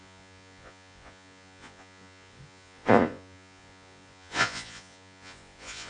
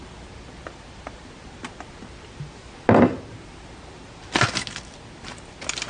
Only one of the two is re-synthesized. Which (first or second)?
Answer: first